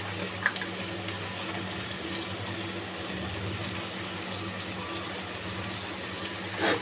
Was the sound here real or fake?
real